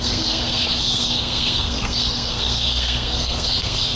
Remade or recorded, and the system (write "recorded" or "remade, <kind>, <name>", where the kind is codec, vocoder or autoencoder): remade, codec, SNAC